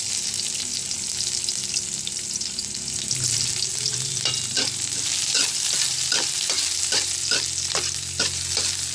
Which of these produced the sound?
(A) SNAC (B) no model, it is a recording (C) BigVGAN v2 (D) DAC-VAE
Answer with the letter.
B